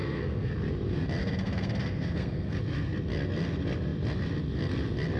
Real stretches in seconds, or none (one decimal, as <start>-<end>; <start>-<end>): 0.5-1.2; 2.6-5.2